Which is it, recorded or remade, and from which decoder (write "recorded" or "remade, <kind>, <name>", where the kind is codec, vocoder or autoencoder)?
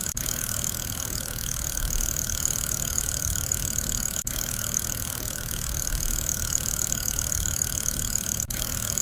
remade, codec, DAC